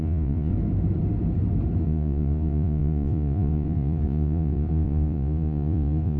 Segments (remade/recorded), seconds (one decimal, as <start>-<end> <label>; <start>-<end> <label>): 0.0-0.5 remade; 0.5-1.8 recorded; 1.8-6.2 remade